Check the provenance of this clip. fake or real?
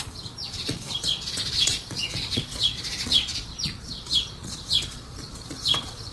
fake